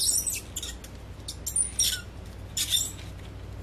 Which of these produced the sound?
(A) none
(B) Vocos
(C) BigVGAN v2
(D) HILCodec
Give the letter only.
A